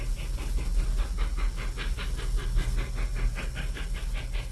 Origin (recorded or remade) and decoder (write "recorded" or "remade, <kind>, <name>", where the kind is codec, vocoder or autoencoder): recorded